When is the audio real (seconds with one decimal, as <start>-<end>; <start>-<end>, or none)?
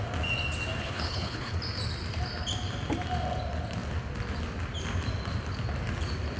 0.0-0.8; 1.6-6.4